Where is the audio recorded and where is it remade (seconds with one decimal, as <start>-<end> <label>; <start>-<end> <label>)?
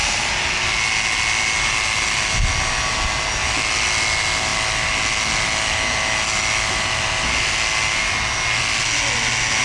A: 0.0-9.6 recorded